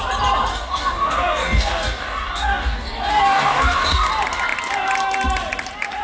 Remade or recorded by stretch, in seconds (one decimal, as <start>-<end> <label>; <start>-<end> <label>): 0.0-0.5 recorded; 0.5-4.1 remade; 4.1-6.0 recorded